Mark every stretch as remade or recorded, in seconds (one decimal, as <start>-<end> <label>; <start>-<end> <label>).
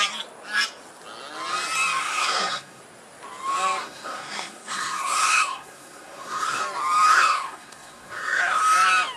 0.0-2.0 recorded; 2.0-2.8 remade; 2.8-3.8 recorded; 3.8-6.6 remade; 6.6-7.1 recorded; 7.1-8.6 remade; 8.6-9.2 recorded